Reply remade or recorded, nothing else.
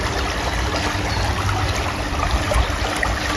recorded